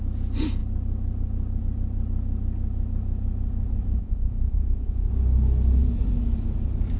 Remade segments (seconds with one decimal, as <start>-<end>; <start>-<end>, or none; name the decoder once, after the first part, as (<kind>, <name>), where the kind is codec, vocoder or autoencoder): 4.0-5.1 (vocoder, Vocos)